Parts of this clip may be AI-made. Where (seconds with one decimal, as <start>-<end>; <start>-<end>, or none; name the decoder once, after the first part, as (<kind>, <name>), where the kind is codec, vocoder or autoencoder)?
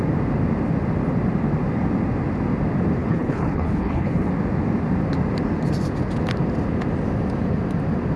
3.0-4.3 (codec, HILCodec)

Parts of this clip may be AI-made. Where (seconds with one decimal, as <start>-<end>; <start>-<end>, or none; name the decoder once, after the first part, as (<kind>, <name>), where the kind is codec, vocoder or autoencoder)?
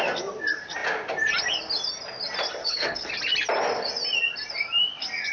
2.6-3.1 (codec, HILCodec)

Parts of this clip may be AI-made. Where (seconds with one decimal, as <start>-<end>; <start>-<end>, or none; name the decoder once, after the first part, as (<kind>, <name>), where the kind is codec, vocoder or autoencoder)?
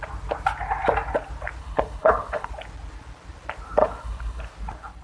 1.6-2.5 (codec, HILCodec); 3.8-4.4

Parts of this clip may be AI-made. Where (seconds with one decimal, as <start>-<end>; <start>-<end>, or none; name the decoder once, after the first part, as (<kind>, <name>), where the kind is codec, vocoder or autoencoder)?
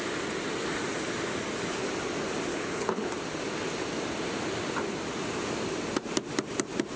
2.5-3.1 (codec, HILCodec)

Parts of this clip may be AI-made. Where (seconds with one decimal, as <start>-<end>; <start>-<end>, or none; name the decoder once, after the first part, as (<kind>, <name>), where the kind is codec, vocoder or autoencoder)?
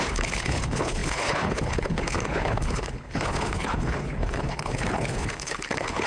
0.0-6.1 (codec, HILCodec)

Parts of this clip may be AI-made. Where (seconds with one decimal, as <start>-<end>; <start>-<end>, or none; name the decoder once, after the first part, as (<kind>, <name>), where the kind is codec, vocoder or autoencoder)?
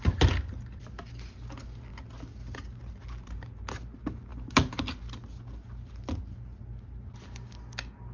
none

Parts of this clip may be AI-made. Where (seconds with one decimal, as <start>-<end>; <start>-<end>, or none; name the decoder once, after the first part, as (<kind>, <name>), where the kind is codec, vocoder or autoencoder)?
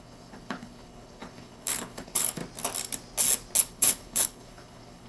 0.0-2.4 (codec, HILCodec); 3.6-5.1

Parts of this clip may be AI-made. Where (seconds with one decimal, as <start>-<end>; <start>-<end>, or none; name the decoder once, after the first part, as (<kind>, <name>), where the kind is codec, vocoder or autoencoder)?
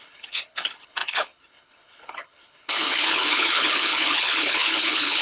0.0-5.2 (codec, HILCodec)